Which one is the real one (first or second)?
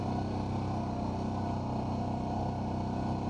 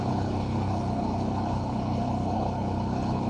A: first